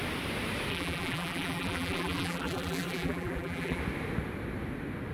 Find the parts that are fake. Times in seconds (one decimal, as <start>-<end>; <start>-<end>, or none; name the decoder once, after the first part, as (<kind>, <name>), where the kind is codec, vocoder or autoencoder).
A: 0.7-3.8 (vocoder, BigVGAN v2)